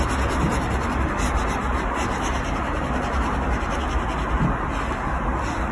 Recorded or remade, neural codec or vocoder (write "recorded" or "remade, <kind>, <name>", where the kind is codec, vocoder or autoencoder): recorded